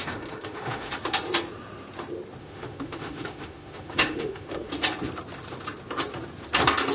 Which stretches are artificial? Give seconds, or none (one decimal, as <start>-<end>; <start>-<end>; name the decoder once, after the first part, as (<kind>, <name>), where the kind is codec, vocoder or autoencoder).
0.0-0.9 (autoencoder, DAC-VAE); 2.4-4.7